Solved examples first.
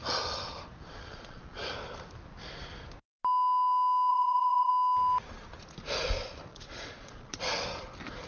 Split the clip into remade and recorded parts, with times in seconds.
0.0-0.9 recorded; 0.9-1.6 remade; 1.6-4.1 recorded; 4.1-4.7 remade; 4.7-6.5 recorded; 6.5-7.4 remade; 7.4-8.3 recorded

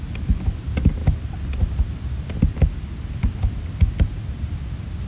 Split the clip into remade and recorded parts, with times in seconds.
0.0-5.1 recorded

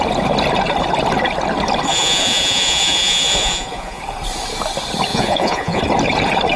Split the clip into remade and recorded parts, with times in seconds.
0.0-1.9 recorded; 1.9-4.0 remade; 4.0-5.1 recorded; 5.1-5.8 remade; 5.8-6.6 recorded

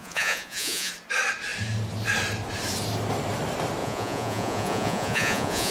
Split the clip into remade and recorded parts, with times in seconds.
0.0-0.9 remade; 0.9-3.8 recorded; 3.8-5.7 remade